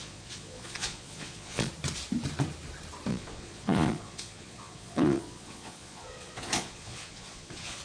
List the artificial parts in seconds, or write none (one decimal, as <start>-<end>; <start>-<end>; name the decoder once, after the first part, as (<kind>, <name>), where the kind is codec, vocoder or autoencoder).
0.0-1.7 (vocoder, Vocos); 3.1-7.8